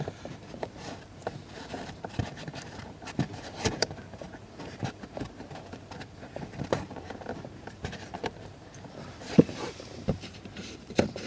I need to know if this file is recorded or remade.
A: remade